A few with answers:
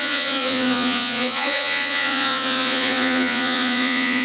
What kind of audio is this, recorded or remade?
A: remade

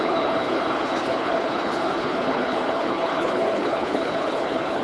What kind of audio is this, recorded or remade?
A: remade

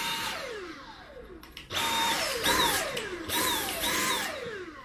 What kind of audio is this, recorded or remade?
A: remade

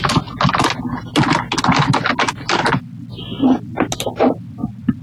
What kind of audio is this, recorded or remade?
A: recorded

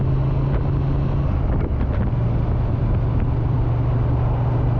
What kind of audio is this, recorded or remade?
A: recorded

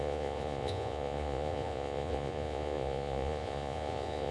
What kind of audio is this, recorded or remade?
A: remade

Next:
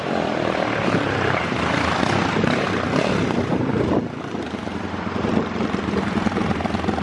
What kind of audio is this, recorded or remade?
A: remade